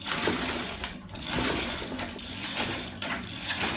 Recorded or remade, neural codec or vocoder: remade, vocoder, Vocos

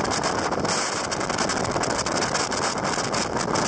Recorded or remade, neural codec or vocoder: recorded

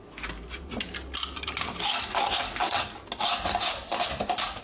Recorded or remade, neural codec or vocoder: recorded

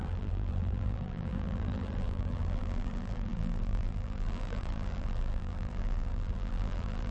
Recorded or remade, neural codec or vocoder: remade, vocoder, BigVGAN v2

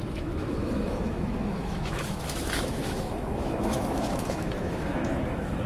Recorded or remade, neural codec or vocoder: remade, autoencoder, DAC-VAE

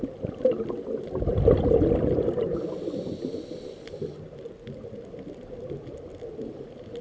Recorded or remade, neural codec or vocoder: recorded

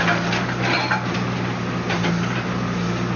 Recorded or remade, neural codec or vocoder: recorded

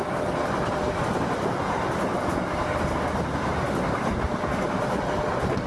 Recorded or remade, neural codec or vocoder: recorded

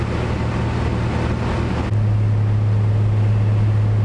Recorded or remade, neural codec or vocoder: recorded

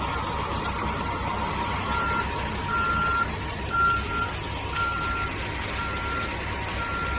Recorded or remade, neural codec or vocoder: recorded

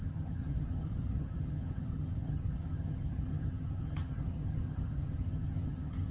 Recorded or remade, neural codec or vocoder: remade, vocoder, HiFi-GAN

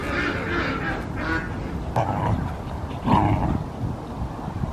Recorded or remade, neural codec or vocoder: recorded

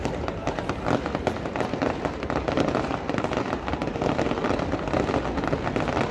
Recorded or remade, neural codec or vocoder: recorded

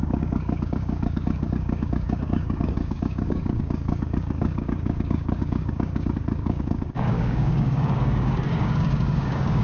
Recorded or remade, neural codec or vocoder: remade, codec, DAC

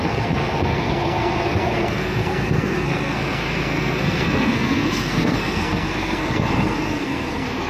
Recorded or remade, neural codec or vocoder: remade, codec, SNAC